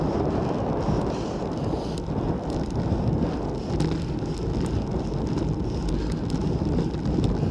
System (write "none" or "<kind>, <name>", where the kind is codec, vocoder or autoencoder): none